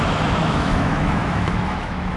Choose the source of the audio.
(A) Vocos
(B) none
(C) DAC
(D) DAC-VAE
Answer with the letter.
D